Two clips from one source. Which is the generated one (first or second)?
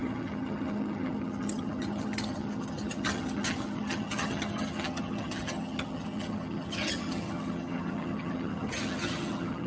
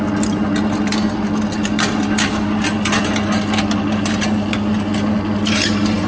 first